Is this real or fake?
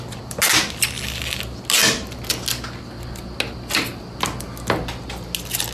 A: real